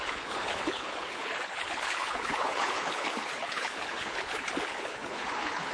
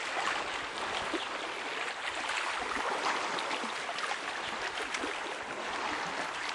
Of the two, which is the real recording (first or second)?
second